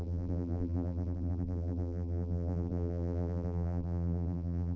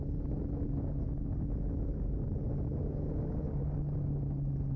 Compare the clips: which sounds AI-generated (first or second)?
first